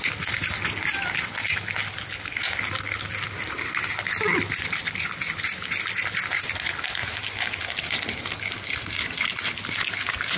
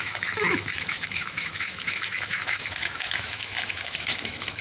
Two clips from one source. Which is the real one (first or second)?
first